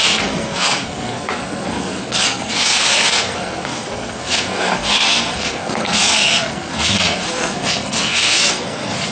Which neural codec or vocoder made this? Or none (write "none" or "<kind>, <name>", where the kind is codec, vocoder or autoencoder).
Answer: codec, SNAC